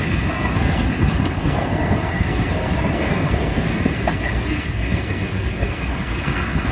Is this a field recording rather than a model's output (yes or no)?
no